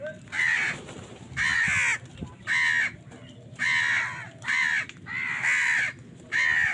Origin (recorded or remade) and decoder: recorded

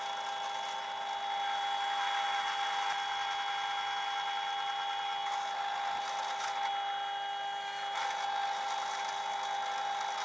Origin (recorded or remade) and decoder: recorded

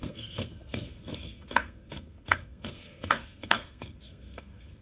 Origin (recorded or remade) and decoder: remade, codec, SNAC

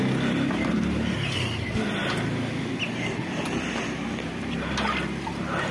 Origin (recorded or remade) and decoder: recorded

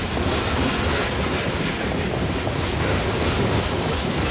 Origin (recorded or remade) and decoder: recorded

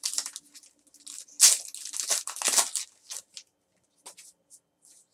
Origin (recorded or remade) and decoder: recorded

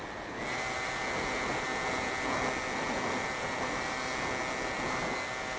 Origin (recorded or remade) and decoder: recorded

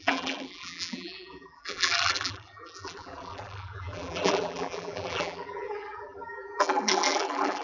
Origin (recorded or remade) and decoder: remade, vocoder, BigVGAN v2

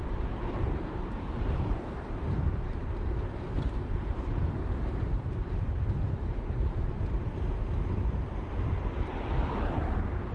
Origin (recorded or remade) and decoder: remade, vocoder, BigVGAN v2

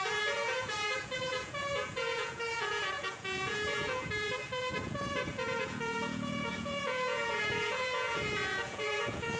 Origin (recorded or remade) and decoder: remade, vocoder, Vocos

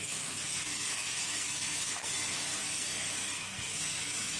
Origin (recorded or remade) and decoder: remade, codec, SNAC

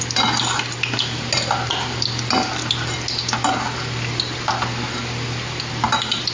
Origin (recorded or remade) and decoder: recorded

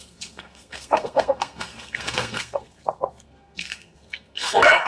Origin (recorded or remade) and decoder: remade, codec, SNAC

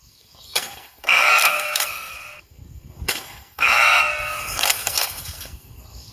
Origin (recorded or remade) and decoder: remade, codec, SNAC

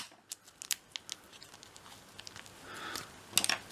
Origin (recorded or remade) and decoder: recorded